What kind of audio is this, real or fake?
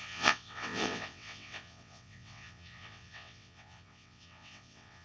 fake